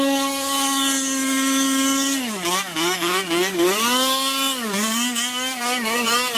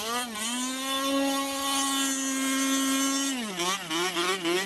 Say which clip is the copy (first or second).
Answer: first